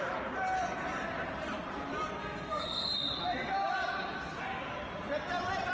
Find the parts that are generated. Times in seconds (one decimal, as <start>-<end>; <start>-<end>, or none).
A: 2.2-2.9